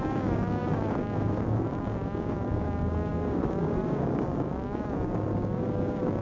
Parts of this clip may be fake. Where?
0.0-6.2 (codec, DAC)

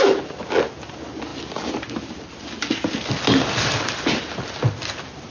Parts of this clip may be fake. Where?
none